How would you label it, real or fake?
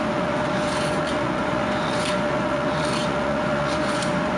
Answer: fake